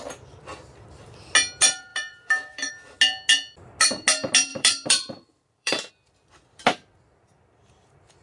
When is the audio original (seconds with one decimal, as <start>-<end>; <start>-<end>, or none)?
0.0-1.9; 2.7-4.5; 5.9-8.2